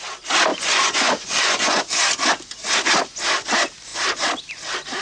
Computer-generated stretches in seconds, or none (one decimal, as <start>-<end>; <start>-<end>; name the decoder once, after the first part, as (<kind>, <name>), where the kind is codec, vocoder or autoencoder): 0.5-1.8 (vocoder, Vocos)